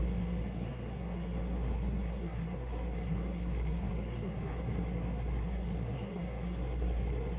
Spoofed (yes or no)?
yes